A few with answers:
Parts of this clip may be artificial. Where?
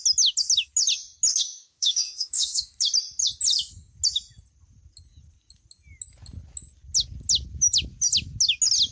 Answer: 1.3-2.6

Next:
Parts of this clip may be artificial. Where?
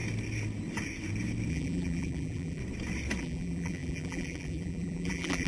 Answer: 1.5-2.6; 3.2-5.5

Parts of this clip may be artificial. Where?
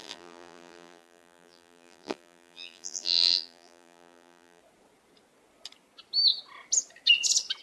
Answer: 0.0-4.6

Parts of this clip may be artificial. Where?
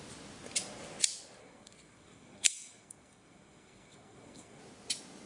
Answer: 1.4-4.6